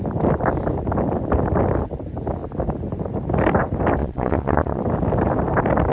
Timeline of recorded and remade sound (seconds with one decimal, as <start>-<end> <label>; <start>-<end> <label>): 0.0-4.0 recorded; 4.0-4.8 remade; 4.8-5.9 recorded